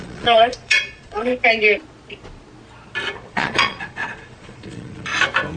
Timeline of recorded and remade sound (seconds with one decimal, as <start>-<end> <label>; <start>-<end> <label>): 0.0-1.3 remade; 1.3-3.3 recorded; 3.3-5.1 remade; 5.1-5.6 recorded